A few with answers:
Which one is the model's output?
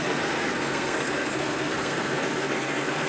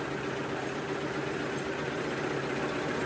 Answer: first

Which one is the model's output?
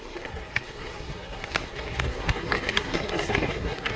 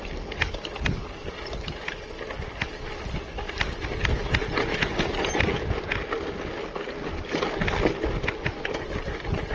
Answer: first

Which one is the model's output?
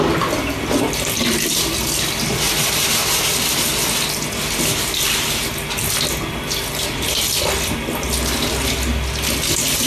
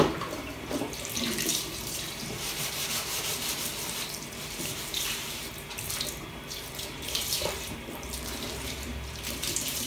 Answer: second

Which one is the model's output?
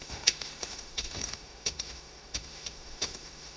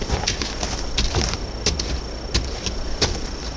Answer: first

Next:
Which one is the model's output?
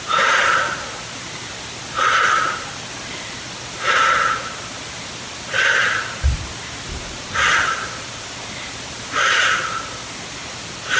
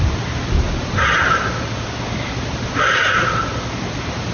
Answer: first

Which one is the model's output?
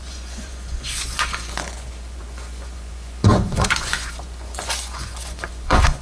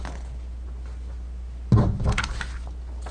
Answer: first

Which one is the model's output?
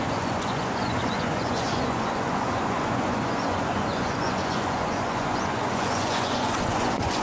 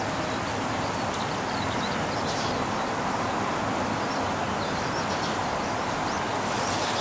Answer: first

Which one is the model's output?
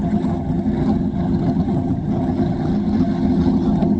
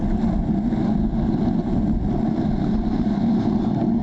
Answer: first